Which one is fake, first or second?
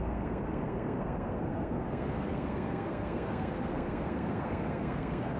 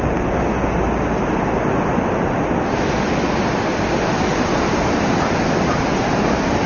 first